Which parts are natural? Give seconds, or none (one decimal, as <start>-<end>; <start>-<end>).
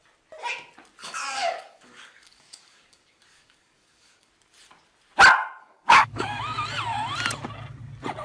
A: 0.0-1.0; 4.3-5.6; 6.4-8.2